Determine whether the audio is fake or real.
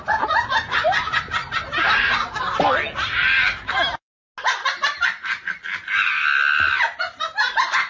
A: real